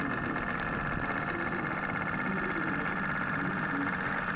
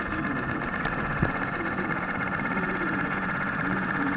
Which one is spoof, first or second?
second